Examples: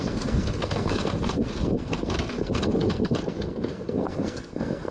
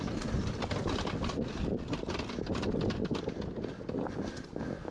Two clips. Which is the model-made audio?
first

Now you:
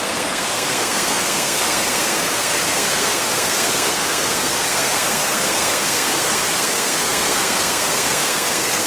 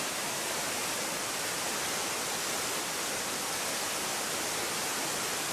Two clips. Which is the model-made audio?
first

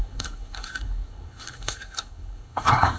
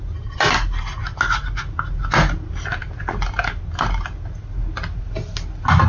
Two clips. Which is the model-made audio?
first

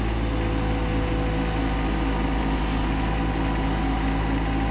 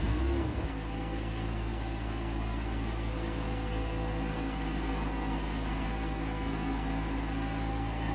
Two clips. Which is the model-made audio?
second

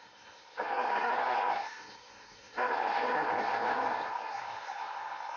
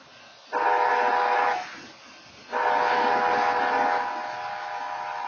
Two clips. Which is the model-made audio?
first